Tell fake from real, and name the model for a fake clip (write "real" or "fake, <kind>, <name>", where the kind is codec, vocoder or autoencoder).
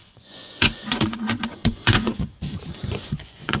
fake, vocoder, Vocos